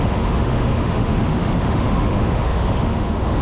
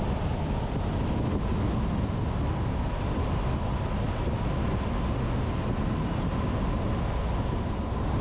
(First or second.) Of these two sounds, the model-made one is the first